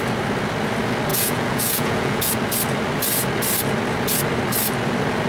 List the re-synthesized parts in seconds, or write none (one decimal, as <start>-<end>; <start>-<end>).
1.1-2.3